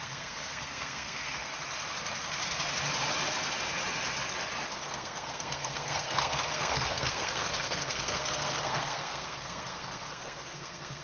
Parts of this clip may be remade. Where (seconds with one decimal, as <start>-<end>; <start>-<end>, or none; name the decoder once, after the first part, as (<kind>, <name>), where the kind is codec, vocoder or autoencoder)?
0.0-1.5 (codec, SNAC); 4.7-11.0